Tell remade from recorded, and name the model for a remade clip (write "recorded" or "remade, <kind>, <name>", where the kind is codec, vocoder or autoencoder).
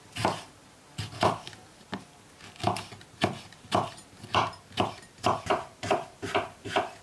recorded